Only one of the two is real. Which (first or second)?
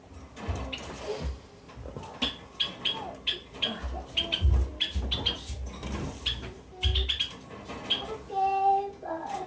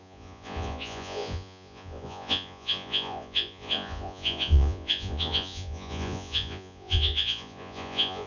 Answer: first